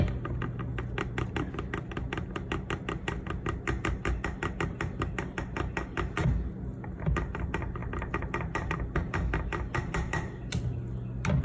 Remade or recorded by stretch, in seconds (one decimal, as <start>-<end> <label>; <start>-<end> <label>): 0.0-11.4 recorded